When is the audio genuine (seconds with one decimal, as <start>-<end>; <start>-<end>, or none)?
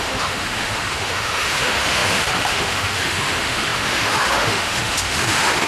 none